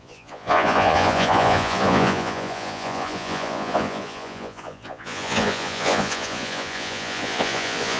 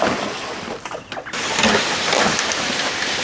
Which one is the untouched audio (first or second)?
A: second